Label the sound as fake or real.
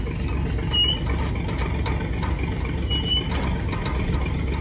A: real